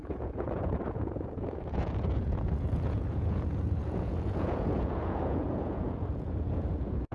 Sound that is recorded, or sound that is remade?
remade